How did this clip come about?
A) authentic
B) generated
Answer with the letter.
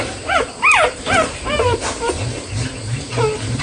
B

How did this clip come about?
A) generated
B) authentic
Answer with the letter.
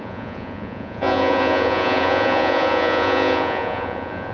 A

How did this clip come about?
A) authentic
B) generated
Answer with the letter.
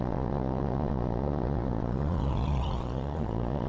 B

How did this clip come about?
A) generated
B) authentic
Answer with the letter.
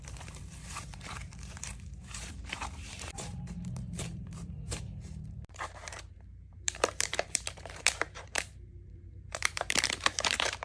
A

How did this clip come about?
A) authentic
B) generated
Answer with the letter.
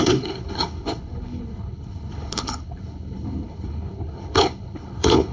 B